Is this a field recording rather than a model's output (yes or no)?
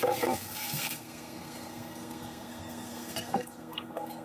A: no